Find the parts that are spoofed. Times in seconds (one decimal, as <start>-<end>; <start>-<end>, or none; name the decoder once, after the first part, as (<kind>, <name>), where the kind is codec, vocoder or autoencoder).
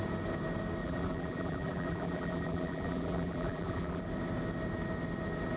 0.8-4.0 (vocoder, BigVGAN v2)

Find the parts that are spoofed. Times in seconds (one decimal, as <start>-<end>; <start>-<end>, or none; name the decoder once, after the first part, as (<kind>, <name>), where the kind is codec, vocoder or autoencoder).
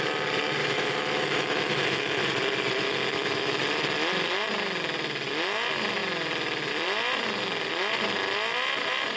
0.6-2.2 (autoencoder, DAC-VAE); 3.1-3.6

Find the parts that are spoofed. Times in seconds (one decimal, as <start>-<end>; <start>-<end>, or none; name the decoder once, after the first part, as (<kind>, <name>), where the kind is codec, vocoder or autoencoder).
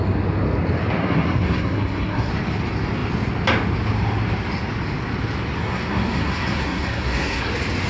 1.0-2.3 (codec, SNAC); 5.6-7.5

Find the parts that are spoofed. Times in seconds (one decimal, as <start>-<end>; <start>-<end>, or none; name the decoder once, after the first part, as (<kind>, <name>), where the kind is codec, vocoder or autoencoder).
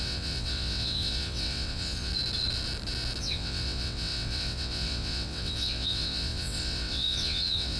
0.0-2.1 (vocoder, WaveNeXt); 3.2-7.8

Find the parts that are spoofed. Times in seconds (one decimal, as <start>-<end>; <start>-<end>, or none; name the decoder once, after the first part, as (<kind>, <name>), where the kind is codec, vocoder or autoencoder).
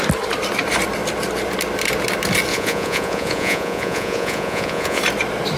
2.5-5.0 (vocoder, Vocos)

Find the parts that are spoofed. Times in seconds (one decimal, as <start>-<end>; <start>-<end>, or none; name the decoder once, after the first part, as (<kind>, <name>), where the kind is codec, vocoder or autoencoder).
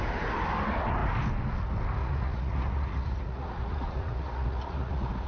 2.0-5.3 (vocoder, Vocos)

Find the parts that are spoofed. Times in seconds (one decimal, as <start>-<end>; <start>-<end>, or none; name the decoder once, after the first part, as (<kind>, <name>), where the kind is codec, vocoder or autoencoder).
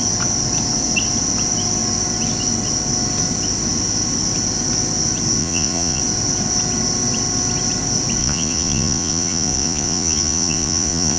5.4-6.0 (vocoder, Vocos); 8.2-11.2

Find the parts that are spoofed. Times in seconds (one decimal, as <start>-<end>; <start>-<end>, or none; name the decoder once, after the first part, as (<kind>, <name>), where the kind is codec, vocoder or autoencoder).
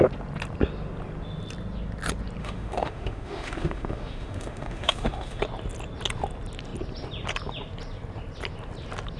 2.4-5.4 (autoencoder, DAC-VAE)